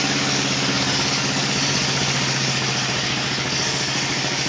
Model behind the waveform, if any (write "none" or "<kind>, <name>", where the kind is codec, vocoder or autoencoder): codec, DAC